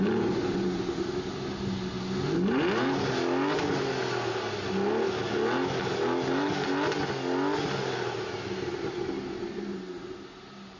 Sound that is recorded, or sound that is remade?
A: recorded